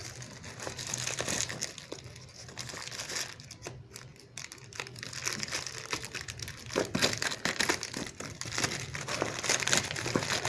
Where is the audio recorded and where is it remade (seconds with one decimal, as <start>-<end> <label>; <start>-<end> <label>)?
0.0-10.5 recorded